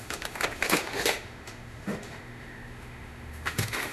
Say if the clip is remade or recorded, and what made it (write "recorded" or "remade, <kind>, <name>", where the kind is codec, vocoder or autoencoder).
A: remade, autoencoder, DAC-VAE